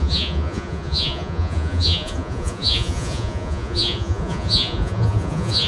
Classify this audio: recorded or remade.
remade